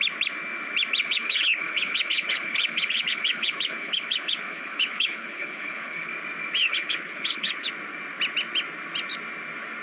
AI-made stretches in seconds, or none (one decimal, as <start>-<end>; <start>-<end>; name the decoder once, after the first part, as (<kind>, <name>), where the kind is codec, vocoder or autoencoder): 1.0-6.1 (codec, HILCodec); 6.6-7.7